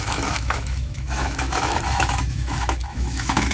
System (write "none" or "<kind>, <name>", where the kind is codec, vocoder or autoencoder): autoencoder, DAC-VAE